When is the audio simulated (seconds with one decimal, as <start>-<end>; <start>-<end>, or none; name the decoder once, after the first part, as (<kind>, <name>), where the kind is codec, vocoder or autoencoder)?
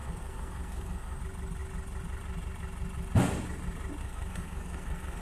0.0-1.2 (codec, SNAC); 4.0-5.2